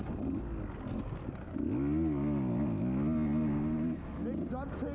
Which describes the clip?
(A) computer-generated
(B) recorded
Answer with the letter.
B